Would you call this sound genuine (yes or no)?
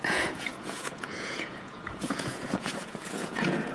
no